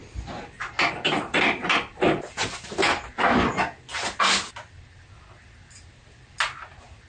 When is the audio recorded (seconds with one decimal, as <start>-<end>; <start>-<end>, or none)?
0.0-1.3; 3.1-7.1